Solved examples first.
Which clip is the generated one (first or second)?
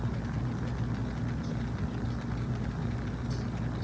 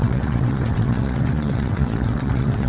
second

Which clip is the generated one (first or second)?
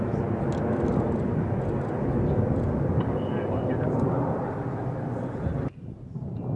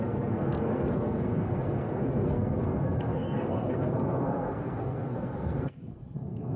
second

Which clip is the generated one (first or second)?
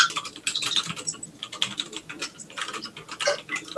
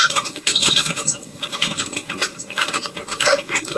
second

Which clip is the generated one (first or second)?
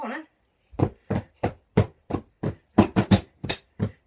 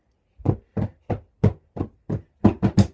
first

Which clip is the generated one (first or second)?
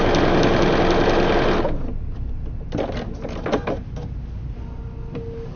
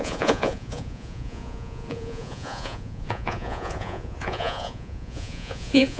second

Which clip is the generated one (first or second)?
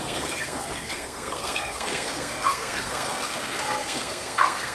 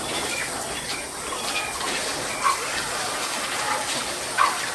first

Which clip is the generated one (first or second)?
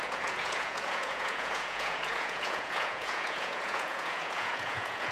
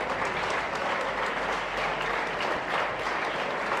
first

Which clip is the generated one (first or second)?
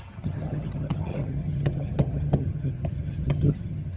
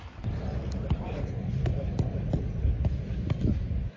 first